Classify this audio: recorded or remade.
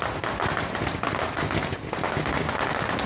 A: recorded